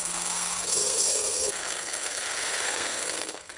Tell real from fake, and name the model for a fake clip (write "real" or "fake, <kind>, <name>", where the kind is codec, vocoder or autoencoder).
fake, codec, SNAC